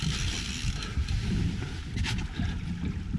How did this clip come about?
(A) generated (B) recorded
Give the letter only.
B